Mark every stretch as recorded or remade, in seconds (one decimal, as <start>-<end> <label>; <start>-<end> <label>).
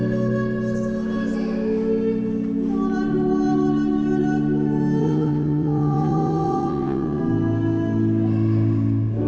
0.0-5.0 recorded; 5.0-7.2 remade; 7.2-9.3 recorded